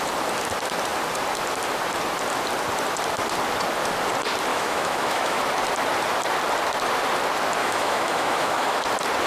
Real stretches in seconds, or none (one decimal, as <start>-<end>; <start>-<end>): 0.0-4.5; 5.4-7.6; 8.9-9.3